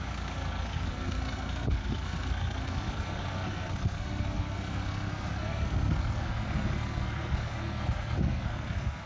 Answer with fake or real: fake